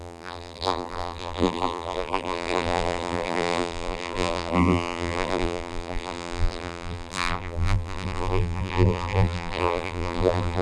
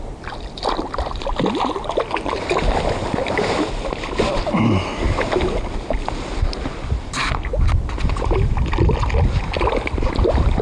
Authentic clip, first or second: second